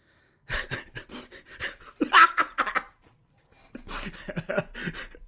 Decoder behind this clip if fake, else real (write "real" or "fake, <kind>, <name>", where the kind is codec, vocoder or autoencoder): real